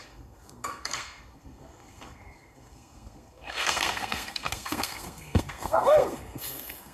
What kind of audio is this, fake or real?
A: fake